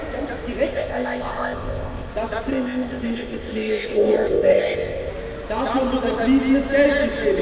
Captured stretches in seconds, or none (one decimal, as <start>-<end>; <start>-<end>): 0.0-0.7; 2.1-2.5; 5.1-7.4